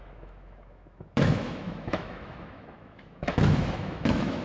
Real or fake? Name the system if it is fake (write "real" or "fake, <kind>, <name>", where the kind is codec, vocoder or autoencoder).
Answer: fake, autoencoder, DAC-VAE